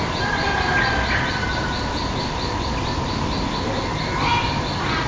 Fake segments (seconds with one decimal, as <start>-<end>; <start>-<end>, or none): none